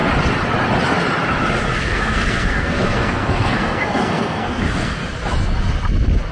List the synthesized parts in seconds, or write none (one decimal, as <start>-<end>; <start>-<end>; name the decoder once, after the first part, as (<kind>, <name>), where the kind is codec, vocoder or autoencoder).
1.8-5.0 (codec, SNAC)